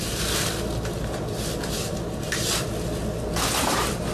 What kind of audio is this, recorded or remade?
recorded